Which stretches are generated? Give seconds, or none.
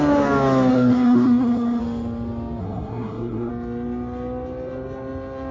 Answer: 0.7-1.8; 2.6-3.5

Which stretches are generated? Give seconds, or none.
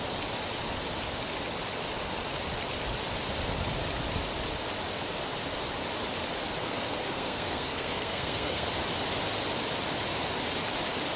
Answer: 6.6-8.7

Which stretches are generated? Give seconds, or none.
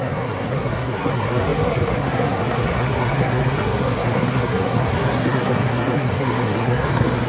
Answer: 0.0-7.3